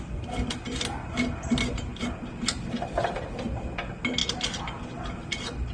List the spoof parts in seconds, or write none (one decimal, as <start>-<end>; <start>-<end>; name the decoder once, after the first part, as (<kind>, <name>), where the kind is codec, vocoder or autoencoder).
none